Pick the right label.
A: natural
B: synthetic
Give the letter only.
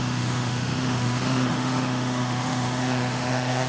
B